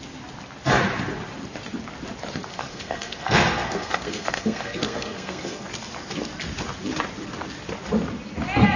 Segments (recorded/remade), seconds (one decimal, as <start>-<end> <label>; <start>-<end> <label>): 0.0-2.5 recorded; 2.5-5.7 remade; 5.7-8.8 recorded